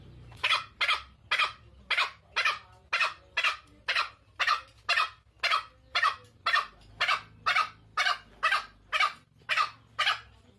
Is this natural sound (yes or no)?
yes